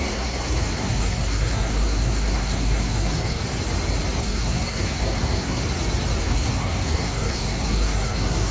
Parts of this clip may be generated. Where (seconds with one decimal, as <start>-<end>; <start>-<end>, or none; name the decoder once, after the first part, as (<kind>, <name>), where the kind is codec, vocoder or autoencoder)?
0.0-3.4 (codec, SNAC); 4.2-5.6; 6.2-8.5